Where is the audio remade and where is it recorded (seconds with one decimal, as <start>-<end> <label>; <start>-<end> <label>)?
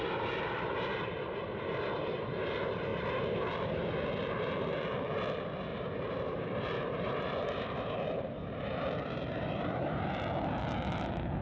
0.0-5.7 recorded; 5.7-10.1 remade; 10.1-11.4 recorded